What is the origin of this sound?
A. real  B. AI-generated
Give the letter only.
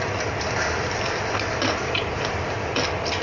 A